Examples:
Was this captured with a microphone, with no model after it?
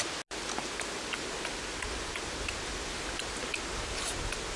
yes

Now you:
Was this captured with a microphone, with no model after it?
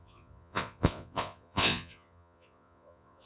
no